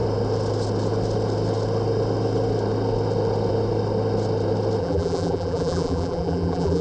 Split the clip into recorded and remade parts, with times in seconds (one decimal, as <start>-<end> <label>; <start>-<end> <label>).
0.0-4.8 recorded; 4.8-6.8 remade